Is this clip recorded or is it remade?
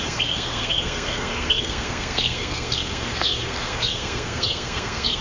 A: remade